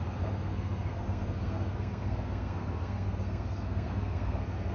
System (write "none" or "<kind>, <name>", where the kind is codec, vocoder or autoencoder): codec, SNAC